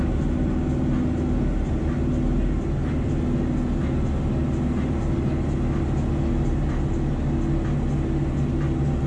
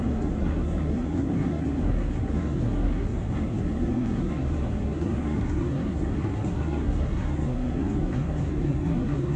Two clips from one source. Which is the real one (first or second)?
first